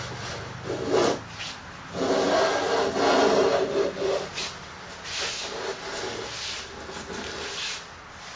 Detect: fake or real real